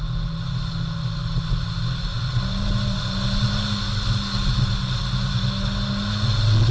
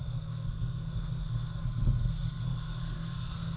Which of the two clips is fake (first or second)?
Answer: second